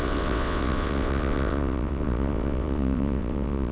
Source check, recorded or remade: remade